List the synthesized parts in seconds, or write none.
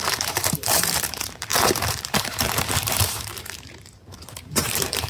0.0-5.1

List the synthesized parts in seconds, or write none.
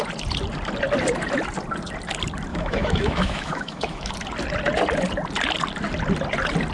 2.5-4.1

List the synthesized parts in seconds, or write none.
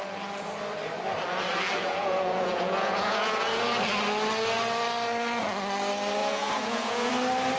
1.8-3.6; 6.2-7.1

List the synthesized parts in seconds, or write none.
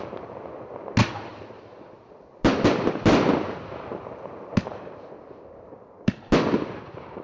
1.3-3.3; 4.7-6.2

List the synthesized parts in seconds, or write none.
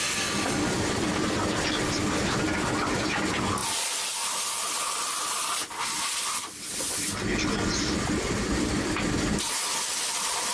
none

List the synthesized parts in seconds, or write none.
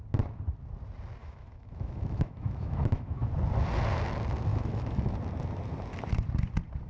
1.2-3.3; 4.5-5.1